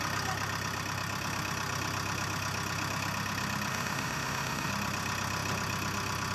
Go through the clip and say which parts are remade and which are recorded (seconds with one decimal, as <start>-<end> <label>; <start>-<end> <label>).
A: 0.0-3.7 recorded; 3.7-4.7 remade; 4.7-6.3 recorded